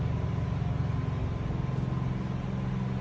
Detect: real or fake real